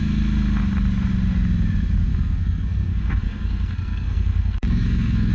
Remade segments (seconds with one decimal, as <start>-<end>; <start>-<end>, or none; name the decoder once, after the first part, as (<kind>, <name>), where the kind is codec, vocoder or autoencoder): 2.1-5.3 (codec, SNAC)